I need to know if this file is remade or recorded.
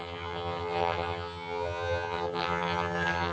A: remade